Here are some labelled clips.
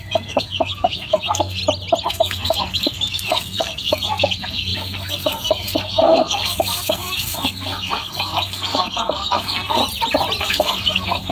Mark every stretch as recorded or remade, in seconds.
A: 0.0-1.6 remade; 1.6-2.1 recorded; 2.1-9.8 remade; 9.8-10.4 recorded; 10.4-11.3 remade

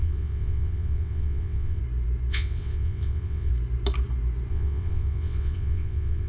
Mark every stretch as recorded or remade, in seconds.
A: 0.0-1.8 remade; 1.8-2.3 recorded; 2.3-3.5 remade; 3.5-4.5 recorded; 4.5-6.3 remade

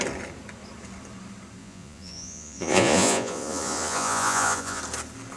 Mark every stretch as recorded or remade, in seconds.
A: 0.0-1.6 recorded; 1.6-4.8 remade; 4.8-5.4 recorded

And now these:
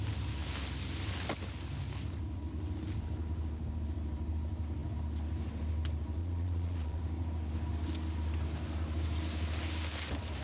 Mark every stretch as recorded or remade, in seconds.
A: 0.0-6.2 recorded; 6.2-7.0 remade; 7.0-10.4 recorded